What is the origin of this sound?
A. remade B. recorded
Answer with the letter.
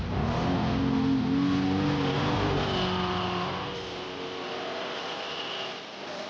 B